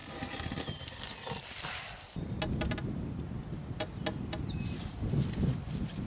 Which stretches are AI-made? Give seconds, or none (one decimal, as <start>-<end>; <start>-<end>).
none